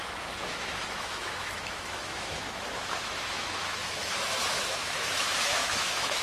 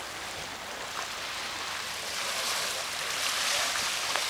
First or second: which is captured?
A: second